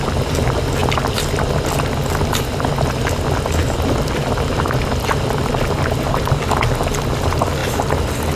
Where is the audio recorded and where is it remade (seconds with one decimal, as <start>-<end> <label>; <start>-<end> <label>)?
0.0-8.4 recorded